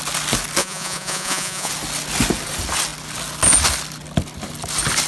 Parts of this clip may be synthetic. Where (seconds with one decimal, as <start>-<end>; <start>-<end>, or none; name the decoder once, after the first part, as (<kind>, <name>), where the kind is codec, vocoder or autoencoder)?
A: 0.6-1.7 (vocoder, Vocos)